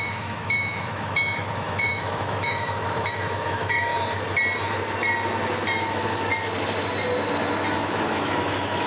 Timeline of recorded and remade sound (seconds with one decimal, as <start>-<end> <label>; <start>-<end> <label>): 0.0-3.9 remade; 3.9-5.8 recorded; 5.8-6.3 remade; 6.3-7.7 recorded; 7.7-8.9 remade